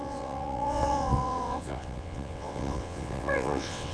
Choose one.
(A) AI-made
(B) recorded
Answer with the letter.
A